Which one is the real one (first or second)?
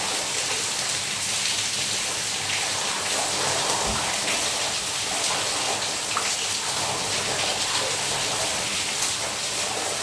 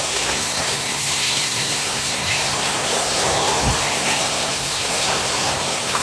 first